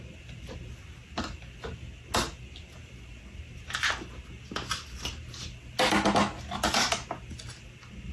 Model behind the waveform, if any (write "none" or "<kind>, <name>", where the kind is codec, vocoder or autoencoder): none